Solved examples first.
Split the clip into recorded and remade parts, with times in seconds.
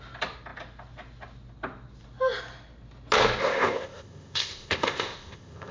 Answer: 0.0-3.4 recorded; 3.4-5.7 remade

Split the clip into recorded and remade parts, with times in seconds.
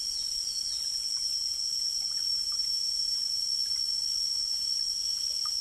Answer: 0.0-2.3 recorded; 2.3-3.2 remade; 3.2-5.6 recorded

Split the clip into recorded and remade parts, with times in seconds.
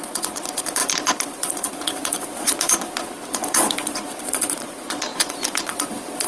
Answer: 0.0-6.3 remade